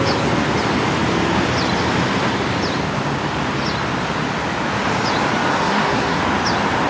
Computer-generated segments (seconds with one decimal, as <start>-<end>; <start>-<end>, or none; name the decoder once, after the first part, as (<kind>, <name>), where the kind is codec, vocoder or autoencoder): 5.5-6.2 (codec, SNAC)